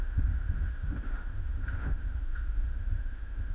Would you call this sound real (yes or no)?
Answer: no